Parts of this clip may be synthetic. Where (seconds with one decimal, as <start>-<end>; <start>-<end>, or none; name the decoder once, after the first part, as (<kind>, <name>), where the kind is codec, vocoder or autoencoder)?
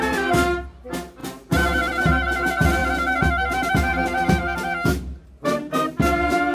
none